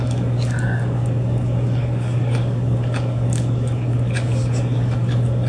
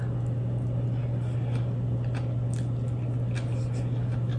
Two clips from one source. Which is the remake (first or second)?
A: first